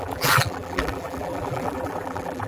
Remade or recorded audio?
remade